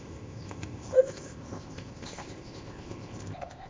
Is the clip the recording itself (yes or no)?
no